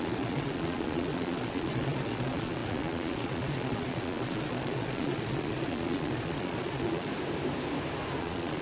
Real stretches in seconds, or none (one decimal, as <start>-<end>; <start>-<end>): 7.1-8.2